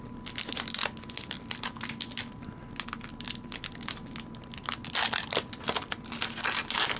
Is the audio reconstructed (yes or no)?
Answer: no